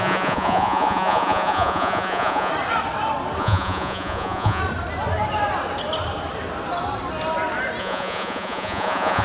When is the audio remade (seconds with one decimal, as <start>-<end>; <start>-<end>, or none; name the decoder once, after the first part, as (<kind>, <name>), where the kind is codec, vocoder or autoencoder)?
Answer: 0.0-2.5 (vocoder, Vocos); 3.4-4.6; 7.8-9.2